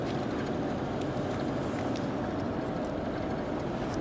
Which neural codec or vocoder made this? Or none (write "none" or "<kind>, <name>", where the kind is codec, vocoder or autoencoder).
none